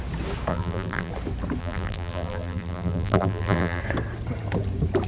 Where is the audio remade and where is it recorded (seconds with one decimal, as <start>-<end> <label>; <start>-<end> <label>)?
0.0-0.5 recorded; 0.5-1.1 remade; 1.1-1.6 recorded; 1.6-3.8 remade; 3.8-5.1 recorded

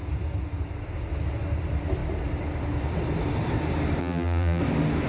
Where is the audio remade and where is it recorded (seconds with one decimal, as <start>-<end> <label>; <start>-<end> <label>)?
0.0-4.0 recorded; 4.0-4.6 remade; 4.6-5.1 recorded

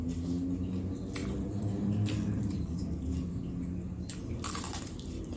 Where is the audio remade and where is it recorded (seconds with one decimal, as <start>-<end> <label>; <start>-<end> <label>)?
0.0-1.2 recorded; 1.2-3.4 remade; 3.4-4.7 recorded; 4.7-5.4 remade

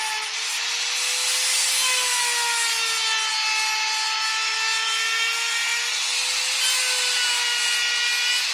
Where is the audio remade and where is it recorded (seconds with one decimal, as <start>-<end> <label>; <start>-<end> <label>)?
0.0-8.5 recorded

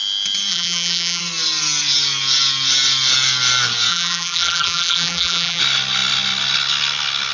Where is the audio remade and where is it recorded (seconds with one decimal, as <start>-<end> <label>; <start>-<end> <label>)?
0.0-0.5 recorded; 0.5-1.2 remade; 1.2-3.9 recorded; 3.9-5.6 remade; 5.6-7.3 recorded

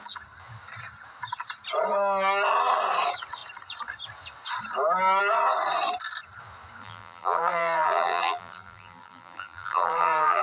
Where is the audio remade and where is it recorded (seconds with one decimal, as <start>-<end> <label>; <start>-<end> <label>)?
0.0-6.8 recorded; 6.8-10.4 remade

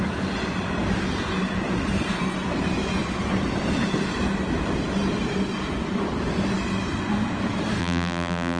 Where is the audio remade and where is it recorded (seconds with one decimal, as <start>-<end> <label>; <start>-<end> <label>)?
0.0-7.8 recorded; 7.8-8.6 remade